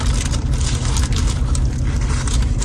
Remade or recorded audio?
recorded